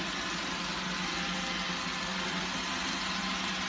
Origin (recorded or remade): recorded